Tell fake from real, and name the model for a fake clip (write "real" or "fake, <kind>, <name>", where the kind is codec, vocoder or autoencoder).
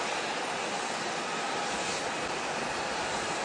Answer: real